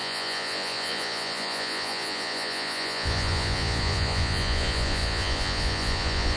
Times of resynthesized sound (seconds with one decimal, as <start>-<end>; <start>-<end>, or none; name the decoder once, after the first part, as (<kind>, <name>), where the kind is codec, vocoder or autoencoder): 0.0-6.4 (vocoder, Vocos)